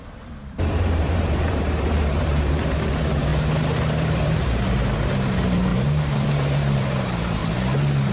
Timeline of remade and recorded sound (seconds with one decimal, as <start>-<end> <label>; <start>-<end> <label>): 0.0-3.3 remade; 3.3-3.8 recorded; 3.8-7.4 remade; 7.4-8.1 recorded